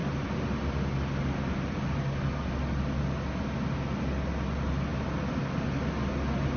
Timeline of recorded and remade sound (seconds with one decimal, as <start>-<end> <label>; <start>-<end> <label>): 0.0-6.6 recorded